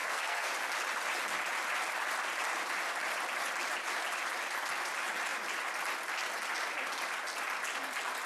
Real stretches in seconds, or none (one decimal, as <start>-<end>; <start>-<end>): 0.5-8.3